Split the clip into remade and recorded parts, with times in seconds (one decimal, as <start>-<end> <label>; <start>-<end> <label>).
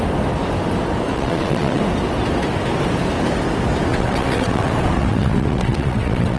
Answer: 0.0-1.1 recorded; 1.1-1.8 remade; 1.8-3.9 recorded; 3.9-6.4 remade